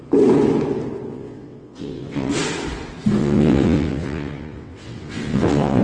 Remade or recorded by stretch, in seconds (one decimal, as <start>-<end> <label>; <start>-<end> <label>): 0.0-1.1 recorded; 1.1-2.3 remade; 2.3-3.2 recorded; 3.2-5.8 remade